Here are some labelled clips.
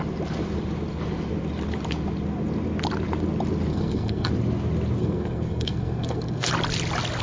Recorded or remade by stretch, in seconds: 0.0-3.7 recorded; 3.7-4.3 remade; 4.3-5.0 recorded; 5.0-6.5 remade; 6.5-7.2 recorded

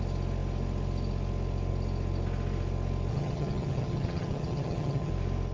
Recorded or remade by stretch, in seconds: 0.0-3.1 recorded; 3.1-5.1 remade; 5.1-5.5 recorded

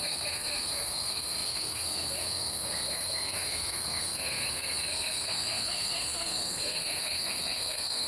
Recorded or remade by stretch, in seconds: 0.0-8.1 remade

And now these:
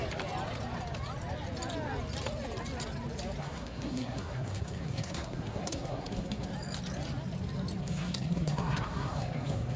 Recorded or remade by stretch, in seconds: 0.0-3.4 recorded; 3.4-6.5 remade; 6.5-7.8 recorded; 7.8-9.8 remade

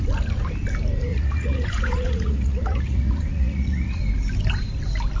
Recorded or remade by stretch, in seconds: 0.0-1.1 recorded; 1.1-4.0 remade; 4.0-5.2 recorded

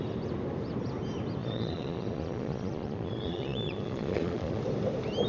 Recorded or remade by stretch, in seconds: 0.0-1.4 recorded; 1.4-4.6 remade; 4.6-5.3 recorded

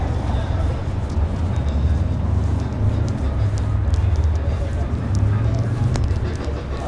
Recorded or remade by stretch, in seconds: 0.0-0.8 recorded; 0.8-1.5 remade; 1.5-6.9 recorded

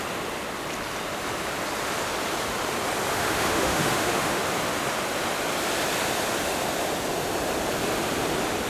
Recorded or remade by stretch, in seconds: 0.0-3.1 recorded; 3.1-4.4 remade; 4.4-8.7 recorded